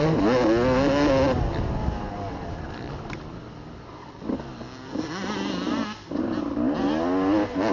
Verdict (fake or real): real